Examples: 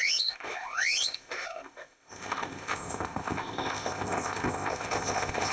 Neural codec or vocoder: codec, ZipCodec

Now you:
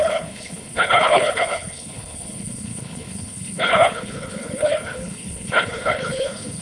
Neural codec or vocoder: codec, HILCodec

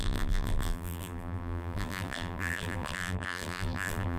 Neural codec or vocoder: vocoder, BigVGAN v2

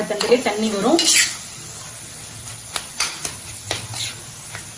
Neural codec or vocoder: none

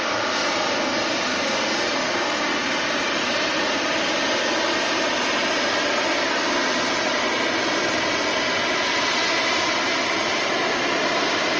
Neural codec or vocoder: none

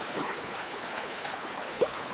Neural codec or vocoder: codec, HILCodec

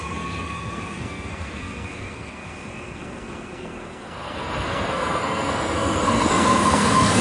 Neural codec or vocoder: codec, SNAC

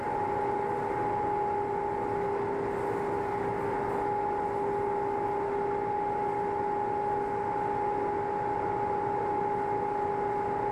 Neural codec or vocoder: none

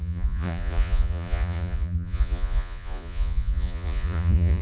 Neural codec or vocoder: vocoder, Vocos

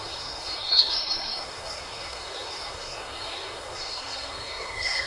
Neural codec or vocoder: codec, SNAC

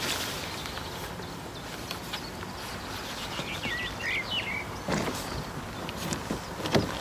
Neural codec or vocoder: none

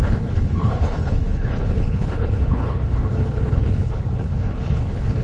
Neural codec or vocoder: codec, HILCodec